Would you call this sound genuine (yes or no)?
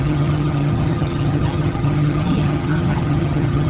no